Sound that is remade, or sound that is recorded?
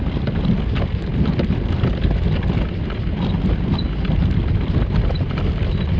recorded